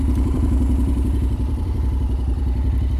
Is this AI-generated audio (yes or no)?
yes